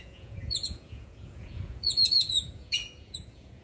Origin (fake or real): fake